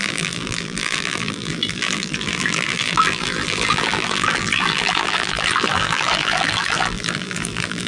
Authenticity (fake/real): fake